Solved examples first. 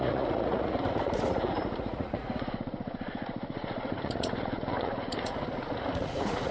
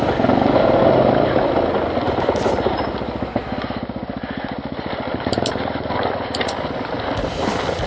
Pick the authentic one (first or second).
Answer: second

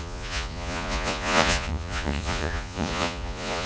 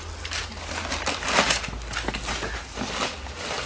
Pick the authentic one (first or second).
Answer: second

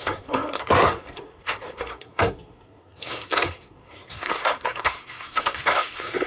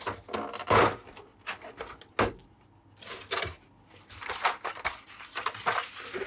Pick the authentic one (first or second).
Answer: second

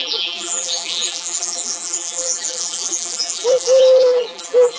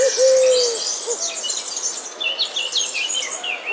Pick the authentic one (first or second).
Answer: second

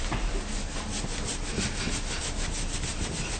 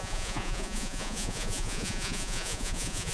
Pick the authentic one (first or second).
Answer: first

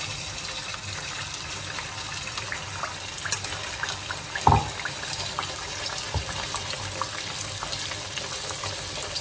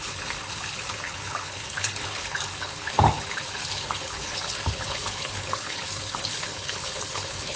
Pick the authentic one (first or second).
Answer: first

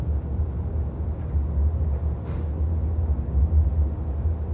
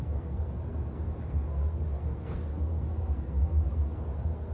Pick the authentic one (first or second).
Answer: first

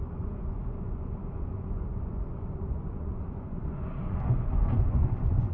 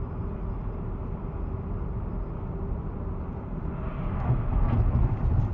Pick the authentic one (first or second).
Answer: second